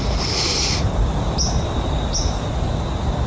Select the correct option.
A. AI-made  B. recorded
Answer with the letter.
B